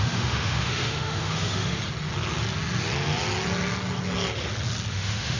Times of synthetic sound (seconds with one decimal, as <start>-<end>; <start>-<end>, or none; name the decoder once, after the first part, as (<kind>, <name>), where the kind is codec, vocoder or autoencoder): 0.0-1.8 (autoencoder, DAC-VAE); 4.9-5.4